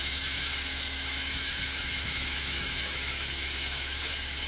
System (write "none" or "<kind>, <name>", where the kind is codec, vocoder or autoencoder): autoencoder, DAC-VAE